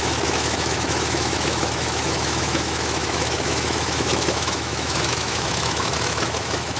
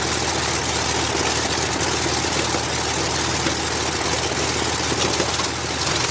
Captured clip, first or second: second